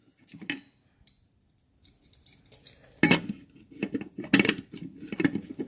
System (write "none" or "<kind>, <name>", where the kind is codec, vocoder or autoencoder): none